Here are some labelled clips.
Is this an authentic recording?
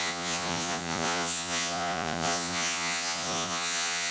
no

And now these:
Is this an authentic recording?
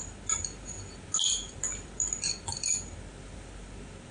yes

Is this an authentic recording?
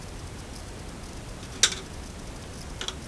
yes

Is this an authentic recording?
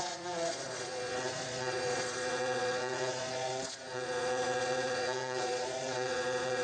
no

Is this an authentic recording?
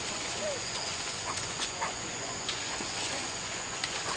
no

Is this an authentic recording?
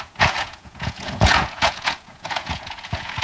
no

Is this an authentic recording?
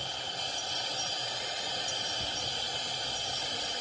yes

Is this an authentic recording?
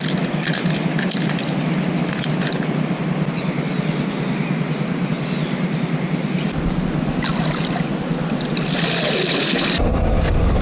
yes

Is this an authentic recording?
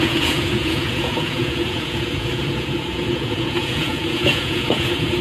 no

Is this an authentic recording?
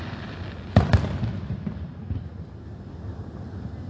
yes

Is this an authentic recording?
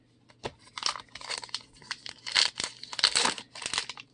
yes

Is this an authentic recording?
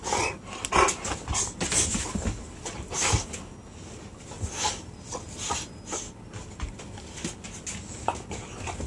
yes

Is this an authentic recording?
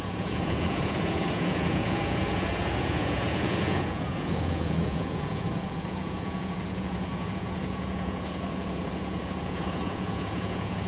no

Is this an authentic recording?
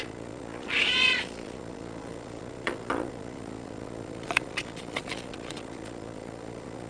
no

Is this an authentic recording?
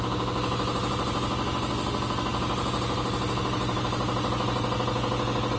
yes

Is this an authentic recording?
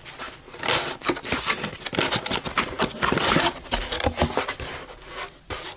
yes